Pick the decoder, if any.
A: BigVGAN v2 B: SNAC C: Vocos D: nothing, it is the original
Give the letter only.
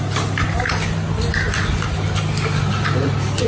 D